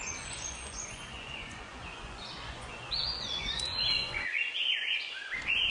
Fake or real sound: fake